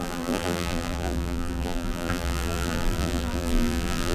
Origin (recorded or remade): remade